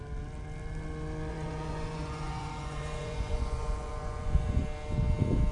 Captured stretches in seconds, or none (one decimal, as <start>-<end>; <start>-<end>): 0.0-1.3; 4.6-5.5